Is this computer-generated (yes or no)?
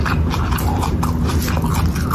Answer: no